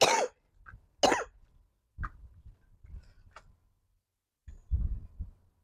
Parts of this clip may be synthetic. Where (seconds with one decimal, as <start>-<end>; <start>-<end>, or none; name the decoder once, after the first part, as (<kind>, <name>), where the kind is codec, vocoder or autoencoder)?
none